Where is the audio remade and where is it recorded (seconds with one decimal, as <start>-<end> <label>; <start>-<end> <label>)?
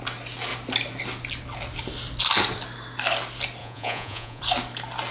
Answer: 0.0-3.6 recorded; 3.6-4.4 remade; 4.4-5.1 recorded